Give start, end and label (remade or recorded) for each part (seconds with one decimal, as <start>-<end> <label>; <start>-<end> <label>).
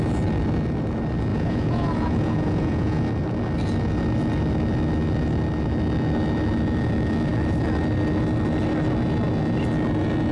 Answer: 0.0-1.3 recorded; 1.3-3.0 remade; 3.0-10.3 recorded